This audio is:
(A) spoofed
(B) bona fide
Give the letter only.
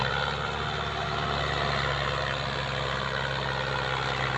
B